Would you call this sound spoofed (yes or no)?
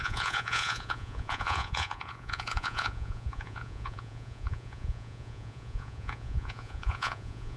yes